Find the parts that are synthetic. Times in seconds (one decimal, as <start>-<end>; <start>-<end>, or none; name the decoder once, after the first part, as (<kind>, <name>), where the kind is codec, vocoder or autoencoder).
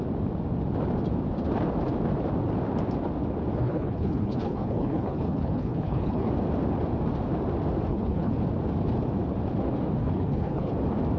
3.6-6.3 (codec, HILCodec); 7.9-8.4; 10.0-10.7